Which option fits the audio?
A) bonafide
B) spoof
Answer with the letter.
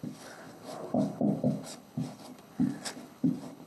B